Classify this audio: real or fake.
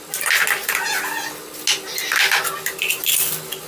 real